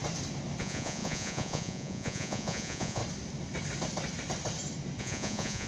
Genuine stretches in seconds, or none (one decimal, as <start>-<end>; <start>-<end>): 0.0-0.6; 3.0-5.0